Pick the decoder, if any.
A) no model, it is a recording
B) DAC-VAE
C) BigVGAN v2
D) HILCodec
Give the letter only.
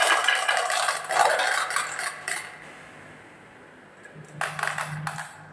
A